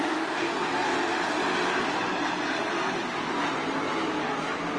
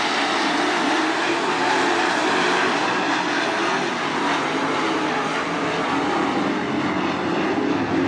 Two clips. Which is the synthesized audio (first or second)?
first